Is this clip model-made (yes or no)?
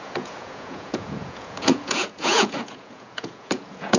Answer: yes